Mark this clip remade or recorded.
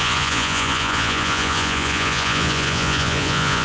remade